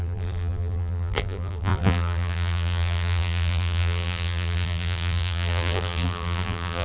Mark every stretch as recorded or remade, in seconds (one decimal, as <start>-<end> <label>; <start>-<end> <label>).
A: 0.0-6.8 remade